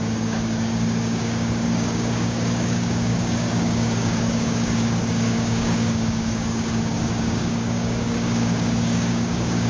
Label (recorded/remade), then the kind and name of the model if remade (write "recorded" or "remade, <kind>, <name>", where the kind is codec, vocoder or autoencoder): remade, codec, DAC